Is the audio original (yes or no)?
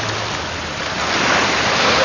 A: yes